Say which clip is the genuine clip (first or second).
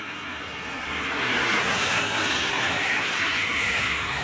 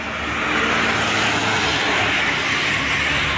second